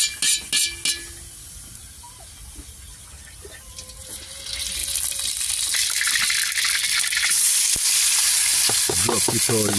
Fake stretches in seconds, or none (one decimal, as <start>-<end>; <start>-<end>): none